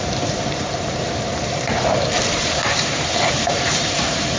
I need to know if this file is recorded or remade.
remade